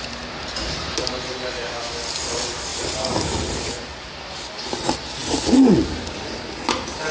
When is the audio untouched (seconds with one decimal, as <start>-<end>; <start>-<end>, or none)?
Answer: 0.0-7.1